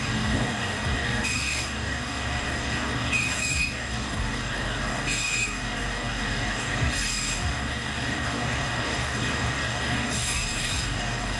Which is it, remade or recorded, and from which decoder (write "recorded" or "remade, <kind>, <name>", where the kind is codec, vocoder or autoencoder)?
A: remade, codec, DAC